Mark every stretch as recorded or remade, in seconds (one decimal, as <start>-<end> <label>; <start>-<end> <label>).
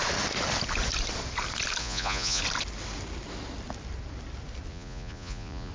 0.0-1.8 recorded; 1.8-2.4 remade; 2.4-4.7 recorded; 4.7-5.7 remade